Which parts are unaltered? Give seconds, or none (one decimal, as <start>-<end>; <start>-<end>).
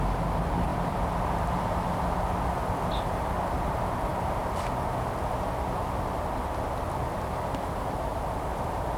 0.0-0.7; 1.9-8.1; 8.6-9.0